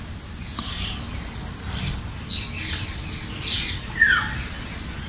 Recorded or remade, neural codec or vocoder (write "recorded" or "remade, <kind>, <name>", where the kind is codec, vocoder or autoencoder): recorded